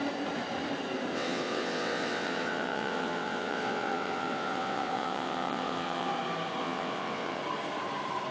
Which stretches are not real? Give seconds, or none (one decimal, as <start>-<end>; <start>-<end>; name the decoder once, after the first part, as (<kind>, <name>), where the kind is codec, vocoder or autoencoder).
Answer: 1.1-6.1 (vocoder, WaveNeXt); 6.6-7.4